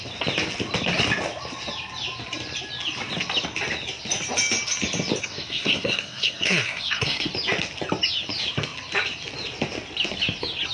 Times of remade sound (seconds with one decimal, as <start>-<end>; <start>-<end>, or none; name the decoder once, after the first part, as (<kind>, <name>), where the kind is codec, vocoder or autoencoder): 5.2-7.3 (codec, SNAC)